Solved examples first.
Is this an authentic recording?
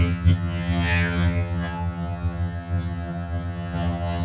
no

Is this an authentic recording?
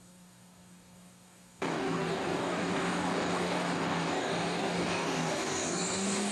no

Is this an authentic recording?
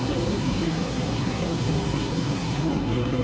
no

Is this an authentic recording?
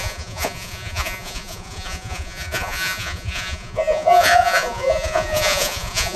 no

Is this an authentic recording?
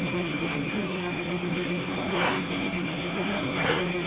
no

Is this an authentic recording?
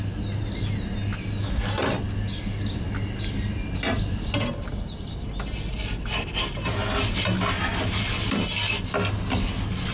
yes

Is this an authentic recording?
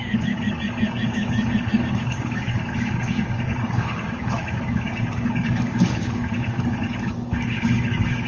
no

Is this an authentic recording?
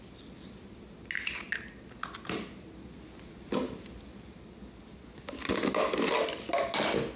yes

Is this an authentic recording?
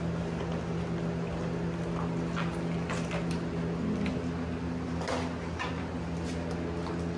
yes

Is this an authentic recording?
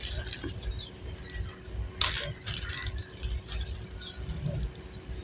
yes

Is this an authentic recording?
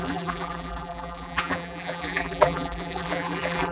no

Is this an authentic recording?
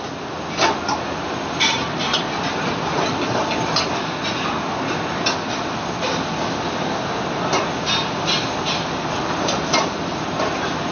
yes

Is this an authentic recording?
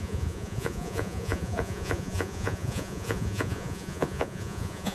no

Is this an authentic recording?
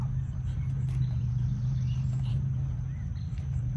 no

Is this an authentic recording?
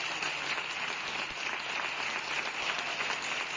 yes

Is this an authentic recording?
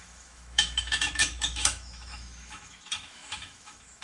no